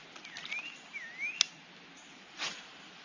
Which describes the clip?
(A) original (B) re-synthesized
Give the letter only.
A